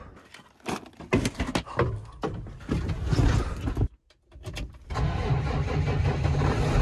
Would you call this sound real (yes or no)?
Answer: yes